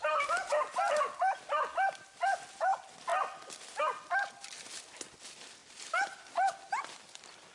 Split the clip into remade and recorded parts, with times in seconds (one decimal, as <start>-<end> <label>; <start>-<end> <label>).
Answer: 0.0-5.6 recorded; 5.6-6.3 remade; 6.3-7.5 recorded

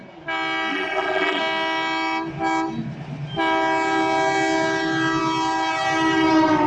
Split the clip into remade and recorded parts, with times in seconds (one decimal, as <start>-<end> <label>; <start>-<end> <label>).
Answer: 0.0-0.7 recorded; 0.7-1.4 remade; 1.4-6.7 recorded

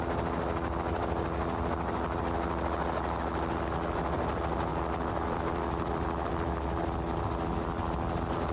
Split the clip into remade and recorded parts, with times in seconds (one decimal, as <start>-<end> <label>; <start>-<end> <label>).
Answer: 0.0-4.7 recorded; 4.7-6.3 remade; 6.3-8.5 recorded

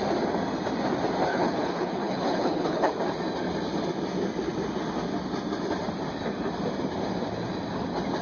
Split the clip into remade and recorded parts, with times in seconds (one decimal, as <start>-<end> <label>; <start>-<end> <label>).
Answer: 0.0-1.3 recorded; 1.3-2.9 remade; 2.9-8.2 recorded

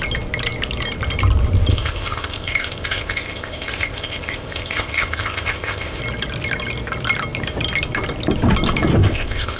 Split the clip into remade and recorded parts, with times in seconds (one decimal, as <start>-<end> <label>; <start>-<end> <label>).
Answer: 0.0-1.7 recorded; 1.7-6.0 remade; 6.0-9.0 recorded; 9.0-9.6 remade

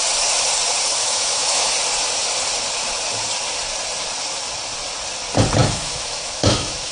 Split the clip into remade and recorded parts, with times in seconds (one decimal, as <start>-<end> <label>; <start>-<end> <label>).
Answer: 0.0-1.0 recorded; 1.0-1.7 remade; 1.7-5.6 recorded; 5.6-6.9 remade